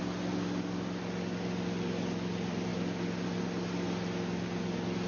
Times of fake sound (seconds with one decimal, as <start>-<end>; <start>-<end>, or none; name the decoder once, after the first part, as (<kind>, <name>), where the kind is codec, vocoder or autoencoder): none